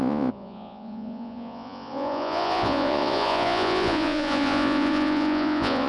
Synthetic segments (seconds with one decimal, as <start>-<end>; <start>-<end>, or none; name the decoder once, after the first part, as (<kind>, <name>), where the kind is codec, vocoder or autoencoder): 0.0-5.9 (vocoder, Vocos)